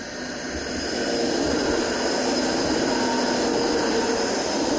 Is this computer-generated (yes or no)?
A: no